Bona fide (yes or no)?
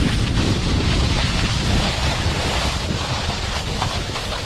no